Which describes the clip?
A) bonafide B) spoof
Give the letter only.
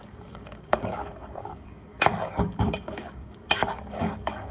B